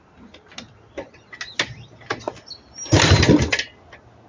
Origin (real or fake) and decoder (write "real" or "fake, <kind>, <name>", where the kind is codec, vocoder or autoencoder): real